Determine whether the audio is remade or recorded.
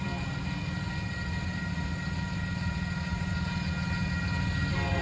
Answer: recorded